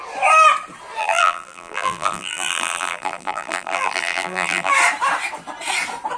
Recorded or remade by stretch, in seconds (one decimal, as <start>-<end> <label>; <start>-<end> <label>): 0.0-1.0 recorded; 1.0-4.7 remade; 4.7-6.2 recorded